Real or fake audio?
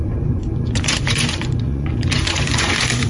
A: fake